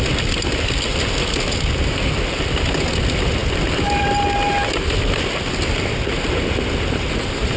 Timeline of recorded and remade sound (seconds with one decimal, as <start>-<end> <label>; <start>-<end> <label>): 0.0-7.6 recorded